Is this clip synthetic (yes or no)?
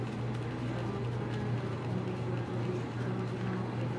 no